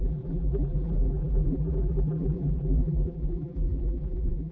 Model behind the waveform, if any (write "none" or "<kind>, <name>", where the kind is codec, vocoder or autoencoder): vocoder, BigVGAN v2